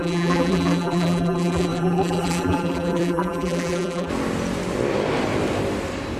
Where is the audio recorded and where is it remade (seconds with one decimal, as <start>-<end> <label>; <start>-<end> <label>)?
0.0-4.1 remade; 4.1-6.2 recorded